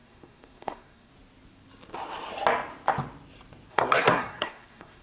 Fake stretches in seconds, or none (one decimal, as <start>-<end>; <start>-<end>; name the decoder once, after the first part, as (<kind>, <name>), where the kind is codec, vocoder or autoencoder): 0.0-1.1 (codec, SNAC); 3.7-5.0